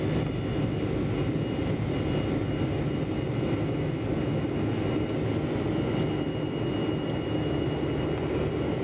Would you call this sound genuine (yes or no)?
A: yes